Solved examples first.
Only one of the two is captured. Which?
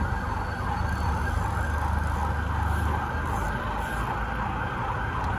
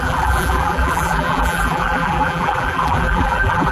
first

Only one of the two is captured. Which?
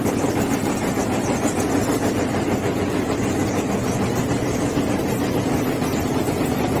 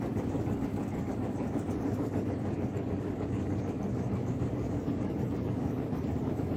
first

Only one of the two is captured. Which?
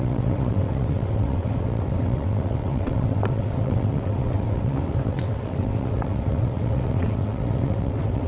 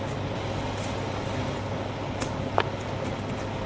second